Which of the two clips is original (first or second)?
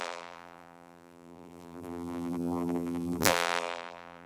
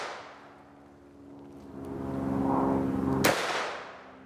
second